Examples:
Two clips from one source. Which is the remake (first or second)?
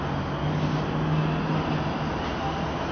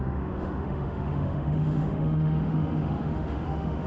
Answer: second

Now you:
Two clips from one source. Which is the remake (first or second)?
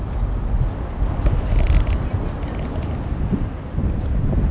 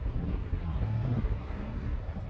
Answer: second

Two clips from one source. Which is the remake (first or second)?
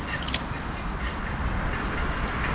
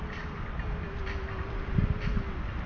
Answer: first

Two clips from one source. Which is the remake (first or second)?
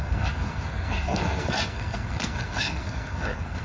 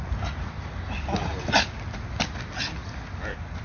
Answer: first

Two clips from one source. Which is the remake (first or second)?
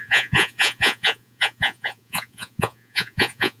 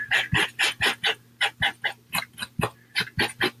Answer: first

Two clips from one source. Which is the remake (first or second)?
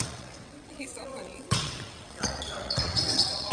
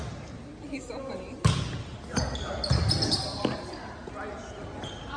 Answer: first